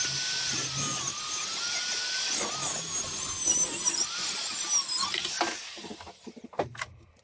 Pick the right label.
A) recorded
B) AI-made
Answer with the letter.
A